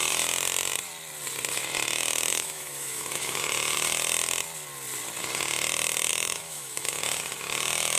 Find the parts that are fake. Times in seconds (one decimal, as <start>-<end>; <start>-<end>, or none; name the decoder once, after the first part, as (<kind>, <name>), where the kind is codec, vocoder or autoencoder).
2.3-3.4 (autoencoder, DAC-VAE); 6.1-7.0